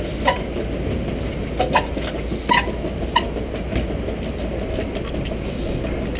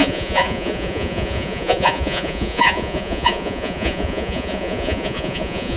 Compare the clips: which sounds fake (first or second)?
second